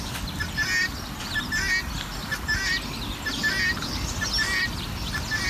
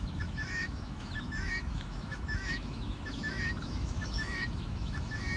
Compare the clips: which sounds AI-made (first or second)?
second